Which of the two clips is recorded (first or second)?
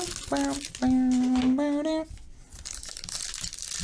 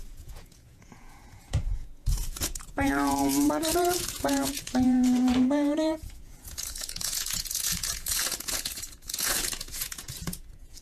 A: first